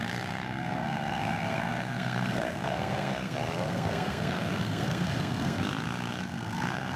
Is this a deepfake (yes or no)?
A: yes